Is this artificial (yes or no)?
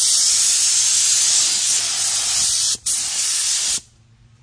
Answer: no